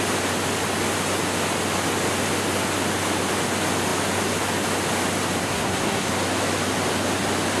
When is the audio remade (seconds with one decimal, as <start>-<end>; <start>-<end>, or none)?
5.4-6.1